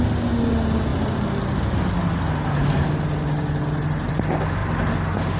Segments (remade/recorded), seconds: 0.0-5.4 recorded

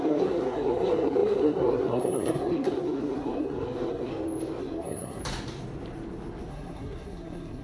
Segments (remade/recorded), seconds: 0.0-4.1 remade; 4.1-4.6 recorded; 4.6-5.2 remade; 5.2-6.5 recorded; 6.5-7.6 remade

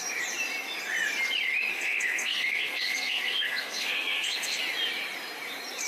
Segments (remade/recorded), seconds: 0.0-1.7 recorded; 1.7-4.6 remade; 4.6-5.9 recorded

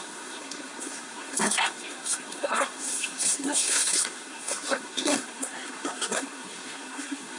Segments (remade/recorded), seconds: 0.0-7.4 remade

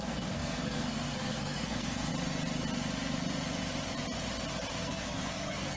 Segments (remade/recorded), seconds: 0.0-2.1 remade; 2.1-4.8 recorded; 4.8-5.8 remade

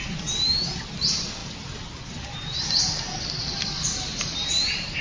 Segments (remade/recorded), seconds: 0.0-5.0 recorded